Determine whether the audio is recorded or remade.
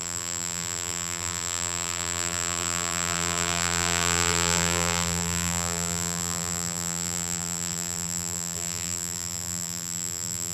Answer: remade